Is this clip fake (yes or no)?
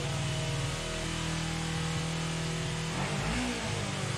no